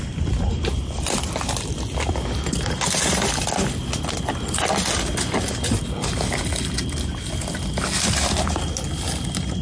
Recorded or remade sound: recorded